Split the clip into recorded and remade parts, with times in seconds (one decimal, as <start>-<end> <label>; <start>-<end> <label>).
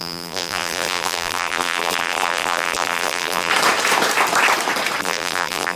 0.0-3.5 remade; 3.5-5.0 recorded; 5.0-5.8 remade